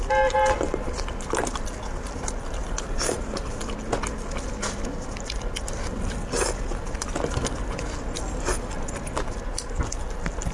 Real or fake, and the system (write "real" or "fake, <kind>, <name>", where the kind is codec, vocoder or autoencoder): real